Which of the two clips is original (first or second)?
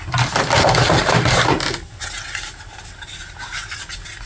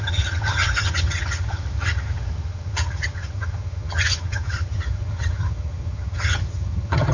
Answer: first